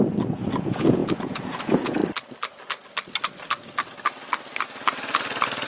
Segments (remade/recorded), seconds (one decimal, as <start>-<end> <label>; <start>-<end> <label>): 0.0-2.0 remade; 2.0-5.7 recorded

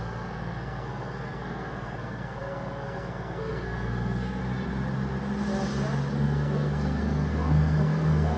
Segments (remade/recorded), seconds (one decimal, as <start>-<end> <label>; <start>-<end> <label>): 0.0-4.4 remade; 4.4-6.1 recorded; 6.1-8.4 remade

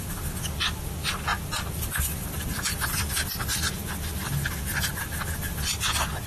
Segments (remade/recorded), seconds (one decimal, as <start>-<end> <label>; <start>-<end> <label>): 0.0-6.3 recorded

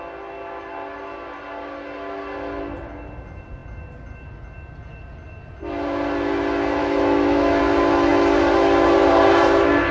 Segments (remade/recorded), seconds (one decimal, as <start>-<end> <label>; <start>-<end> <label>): 0.0-6.8 recorded; 6.8-7.6 remade; 7.6-9.9 recorded